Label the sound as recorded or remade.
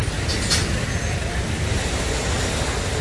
recorded